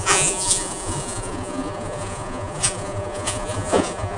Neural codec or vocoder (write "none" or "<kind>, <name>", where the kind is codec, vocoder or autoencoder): vocoder, Vocos